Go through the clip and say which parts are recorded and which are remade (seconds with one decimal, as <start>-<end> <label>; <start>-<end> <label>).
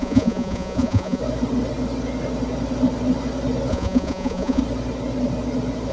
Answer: 0.0-1.2 remade; 1.2-3.7 recorded; 3.7-4.6 remade; 4.6-5.9 recorded